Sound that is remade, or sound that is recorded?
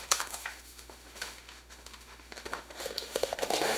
remade